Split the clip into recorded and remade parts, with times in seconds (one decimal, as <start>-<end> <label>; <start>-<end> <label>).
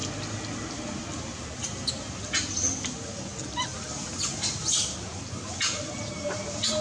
0.0-6.8 recorded